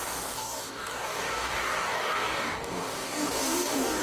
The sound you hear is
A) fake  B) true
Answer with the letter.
A